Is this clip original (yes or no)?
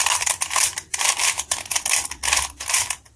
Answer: no